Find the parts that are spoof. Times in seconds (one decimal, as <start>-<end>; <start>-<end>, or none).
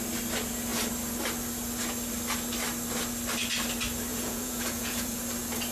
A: 4.1-5.2